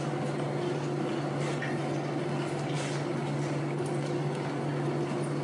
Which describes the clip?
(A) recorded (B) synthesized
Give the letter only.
A